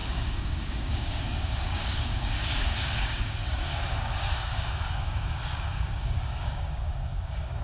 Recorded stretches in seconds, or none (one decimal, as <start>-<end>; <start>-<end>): none